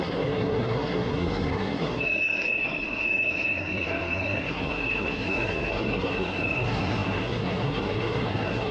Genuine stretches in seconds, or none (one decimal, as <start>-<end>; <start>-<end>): none